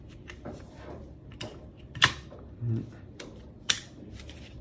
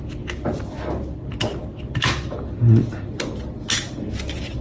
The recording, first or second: second